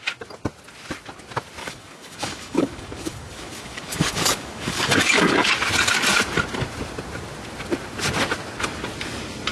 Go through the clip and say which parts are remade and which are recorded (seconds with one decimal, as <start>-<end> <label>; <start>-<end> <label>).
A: 0.0-1.6 recorded; 1.6-5.5 remade; 5.5-9.5 recorded